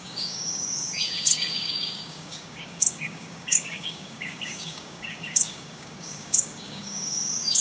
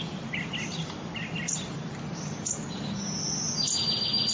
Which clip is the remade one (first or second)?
first